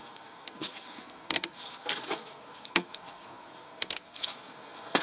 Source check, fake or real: fake